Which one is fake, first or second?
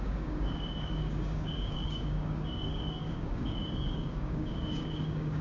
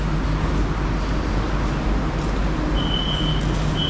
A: first